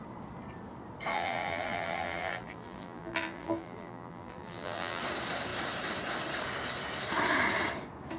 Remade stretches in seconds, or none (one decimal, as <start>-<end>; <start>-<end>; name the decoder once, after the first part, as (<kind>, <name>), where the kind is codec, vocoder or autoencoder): 1.1-5.0 (vocoder, BigVGAN v2)